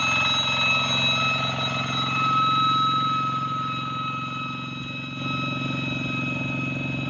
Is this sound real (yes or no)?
yes